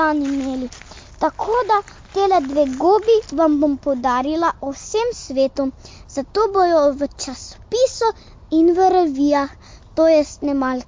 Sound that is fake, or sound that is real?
real